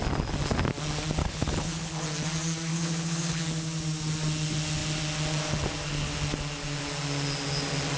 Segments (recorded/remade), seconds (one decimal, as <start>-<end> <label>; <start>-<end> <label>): 0.0-1.2 recorded; 1.2-2.0 remade; 2.0-2.7 recorded; 2.7-3.4 remade; 3.4-8.0 recorded